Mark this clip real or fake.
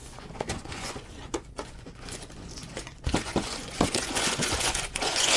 fake